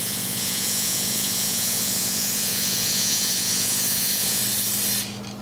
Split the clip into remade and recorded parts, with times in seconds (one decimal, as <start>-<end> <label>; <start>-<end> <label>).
0.0-4.4 remade; 4.4-5.4 recorded